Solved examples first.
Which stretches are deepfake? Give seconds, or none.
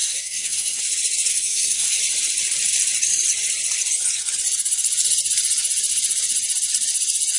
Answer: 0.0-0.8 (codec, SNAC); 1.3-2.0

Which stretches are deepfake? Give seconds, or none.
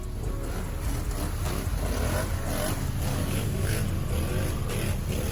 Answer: 3.1-3.7 (codec, DAC)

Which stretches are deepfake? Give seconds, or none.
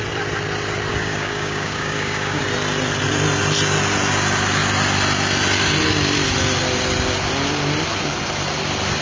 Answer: 0.9-2.4 (codec, DAC)